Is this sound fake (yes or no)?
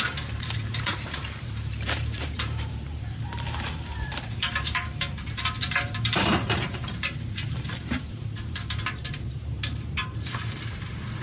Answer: yes